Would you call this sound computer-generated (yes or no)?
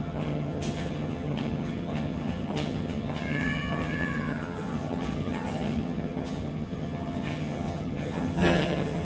yes